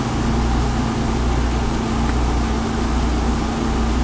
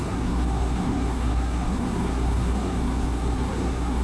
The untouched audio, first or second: first